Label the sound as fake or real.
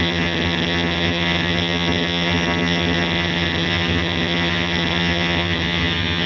fake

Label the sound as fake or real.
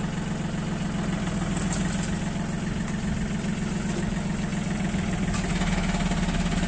real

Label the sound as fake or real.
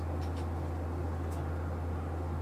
real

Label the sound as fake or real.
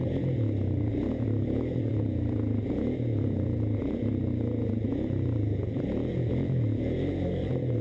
fake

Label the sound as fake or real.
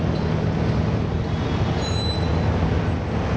real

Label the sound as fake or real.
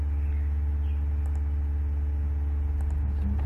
real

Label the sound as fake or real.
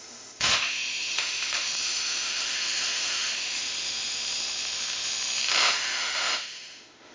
fake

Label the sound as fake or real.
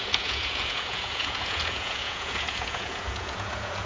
fake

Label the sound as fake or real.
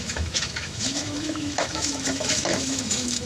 fake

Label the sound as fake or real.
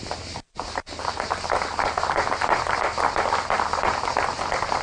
real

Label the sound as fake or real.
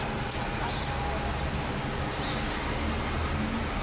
real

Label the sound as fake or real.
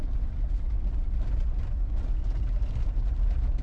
real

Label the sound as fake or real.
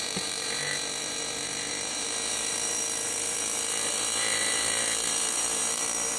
fake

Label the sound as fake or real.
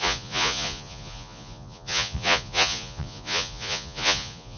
fake